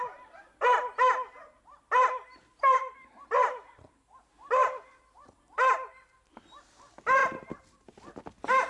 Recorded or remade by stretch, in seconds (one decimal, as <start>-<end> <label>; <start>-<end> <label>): 0.0-8.7 recorded